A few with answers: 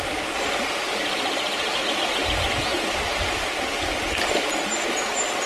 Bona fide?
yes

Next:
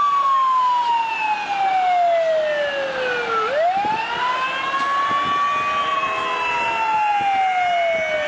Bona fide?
yes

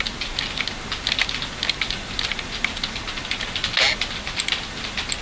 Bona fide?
yes